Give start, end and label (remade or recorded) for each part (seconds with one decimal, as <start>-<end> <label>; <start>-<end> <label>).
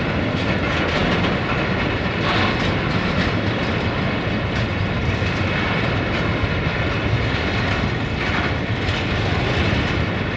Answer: 0.0-10.4 recorded